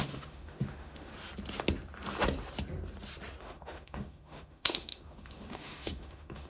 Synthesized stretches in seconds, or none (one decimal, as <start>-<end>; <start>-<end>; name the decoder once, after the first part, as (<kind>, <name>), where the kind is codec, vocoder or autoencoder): 0.0-1.1 (autoencoder, DAC-VAE); 3.4-6.5